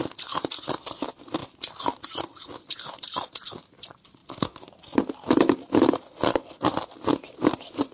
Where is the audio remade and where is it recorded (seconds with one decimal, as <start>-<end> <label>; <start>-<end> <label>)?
0.0-7.9 recorded